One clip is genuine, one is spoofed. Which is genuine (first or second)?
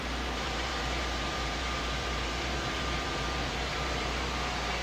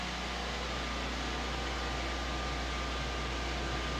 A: second